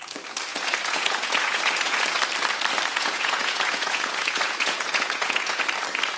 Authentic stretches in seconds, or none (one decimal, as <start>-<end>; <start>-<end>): 0.0-0.5; 2.2-2.9; 5.6-6.2